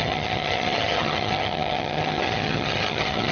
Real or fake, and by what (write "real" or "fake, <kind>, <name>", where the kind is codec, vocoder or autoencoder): fake, vocoder, HiFi-GAN